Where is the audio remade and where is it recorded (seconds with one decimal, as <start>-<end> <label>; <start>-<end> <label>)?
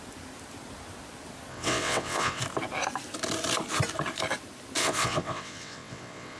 0.0-1.5 recorded; 1.5-2.4 remade; 2.4-4.8 recorded; 4.8-6.4 remade